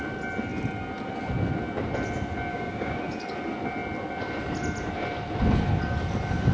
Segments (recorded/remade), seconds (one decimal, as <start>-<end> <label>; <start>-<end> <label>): 0.0-2.5 recorded; 2.5-3.0 remade; 3.0-6.5 recorded